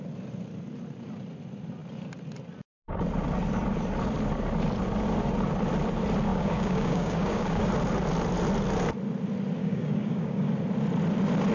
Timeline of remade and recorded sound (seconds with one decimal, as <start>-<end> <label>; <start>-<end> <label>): 0.0-6.3 recorded; 6.3-7.7 remade; 7.7-9.6 recorded; 9.6-10.5 remade; 10.5-11.5 recorded

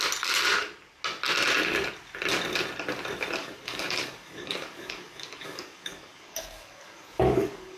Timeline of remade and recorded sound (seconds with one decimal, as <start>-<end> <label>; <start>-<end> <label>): 0.0-3.4 recorded; 3.4-7.8 remade